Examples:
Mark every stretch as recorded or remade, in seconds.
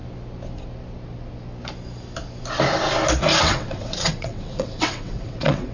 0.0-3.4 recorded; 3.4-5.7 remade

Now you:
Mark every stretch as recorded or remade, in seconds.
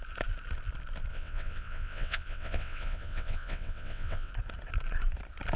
0.0-1.1 recorded; 1.1-4.3 remade; 4.3-5.6 recorded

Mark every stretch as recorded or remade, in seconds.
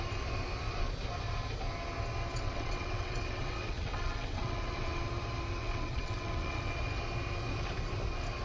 0.0-2.3 recorded; 2.3-5.0 remade; 5.0-5.6 recorded; 5.6-6.6 remade; 6.6-8.4 recorded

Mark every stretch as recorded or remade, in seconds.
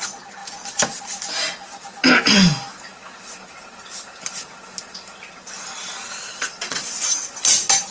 0.0-6.3 recorded; 6.3-7.3 remade; 7.3-7.9 recorded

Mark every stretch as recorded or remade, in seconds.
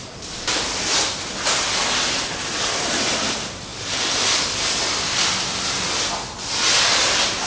0.0-7.5 recorded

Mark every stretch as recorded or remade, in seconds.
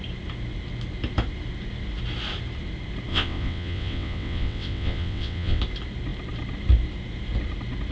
0.0-3.1 recorded; 3.1-5.6 remade; 5.6-7.9 recorded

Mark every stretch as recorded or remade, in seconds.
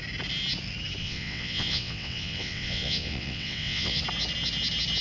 0.0-1.0 recorded; 1.0-4.0 remade; 4.0-5.0 recorded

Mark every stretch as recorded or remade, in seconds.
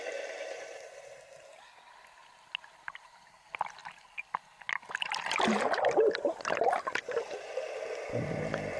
0.0-8.8 recorded